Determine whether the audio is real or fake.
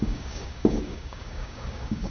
fake